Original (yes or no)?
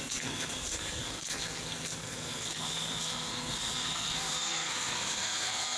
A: no